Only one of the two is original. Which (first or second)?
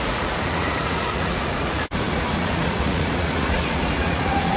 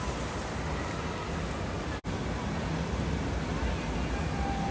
second